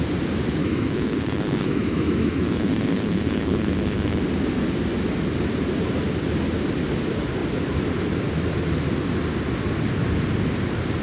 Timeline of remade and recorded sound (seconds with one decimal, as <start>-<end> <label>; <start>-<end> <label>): 0.0-0.6 recorded; 0.6-4.2 remade; 4.2-11.0 recorded